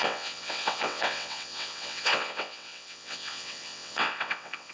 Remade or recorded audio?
remade